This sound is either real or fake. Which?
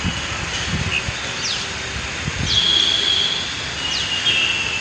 real